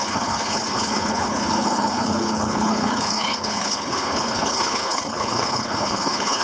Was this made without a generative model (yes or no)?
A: no